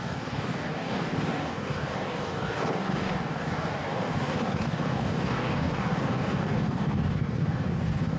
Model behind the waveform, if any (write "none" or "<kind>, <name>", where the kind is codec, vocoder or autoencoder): codec, DAC